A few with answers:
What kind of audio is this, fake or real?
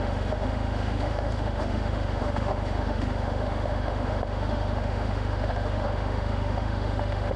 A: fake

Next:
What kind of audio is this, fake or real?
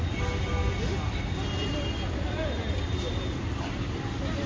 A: real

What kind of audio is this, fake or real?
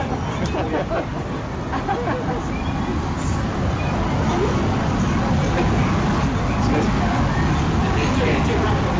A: real